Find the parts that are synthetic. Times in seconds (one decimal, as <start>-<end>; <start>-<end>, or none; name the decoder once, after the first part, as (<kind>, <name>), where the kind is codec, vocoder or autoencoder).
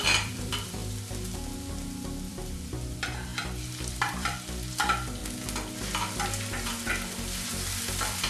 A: 0.0-0.8 (vocoder, BigVGAN v2); 2.3-5.2; 6.9-8.3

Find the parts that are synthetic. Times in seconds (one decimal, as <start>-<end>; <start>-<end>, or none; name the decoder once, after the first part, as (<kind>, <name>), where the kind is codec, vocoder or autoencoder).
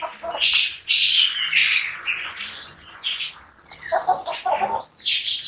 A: 0.4-1.2 (vocoder, Vocos); 1.6-3.3; 4.2-4.8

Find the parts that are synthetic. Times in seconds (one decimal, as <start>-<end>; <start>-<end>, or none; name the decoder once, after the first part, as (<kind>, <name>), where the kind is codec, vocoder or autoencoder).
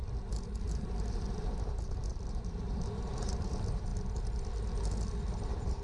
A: 0.6-3.9 (vocoder, BigVGAN v2); 5.3-5.8